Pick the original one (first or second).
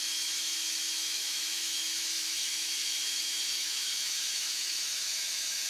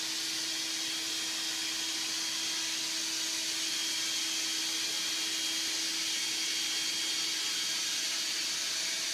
second